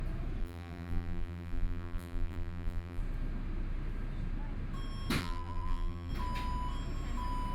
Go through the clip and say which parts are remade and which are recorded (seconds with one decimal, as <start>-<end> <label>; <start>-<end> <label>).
0.0-0.4 recorded; 0.4-3.0 remade; 3.0-5.2 recorded; 5.2-6.1 remade; 6.1-7.5 recorded